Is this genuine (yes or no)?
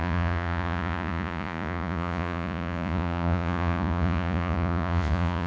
no